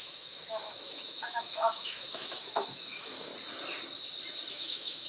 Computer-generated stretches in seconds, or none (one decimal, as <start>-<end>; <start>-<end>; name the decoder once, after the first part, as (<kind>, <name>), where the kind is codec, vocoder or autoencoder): 0.0-3.3 (autoencoder, DAC-VAE); 4.5-5.1